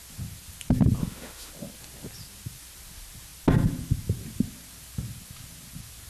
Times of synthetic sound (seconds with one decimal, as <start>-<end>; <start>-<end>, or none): 1.0-1.5